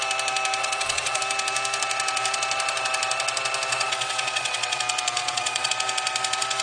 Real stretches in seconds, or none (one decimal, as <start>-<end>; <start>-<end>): 0.0-0.6; 1.2-3.7; 4.8-5.2; 5.7-6.6